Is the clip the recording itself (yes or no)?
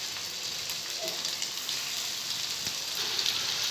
yes